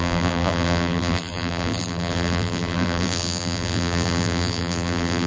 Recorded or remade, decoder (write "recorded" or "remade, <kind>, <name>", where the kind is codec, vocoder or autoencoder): remade, vocoder, BigVGAN v2